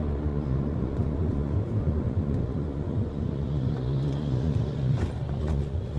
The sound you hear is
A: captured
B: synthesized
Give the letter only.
B